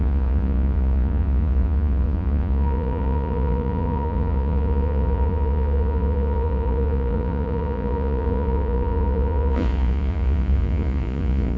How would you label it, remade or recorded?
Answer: remade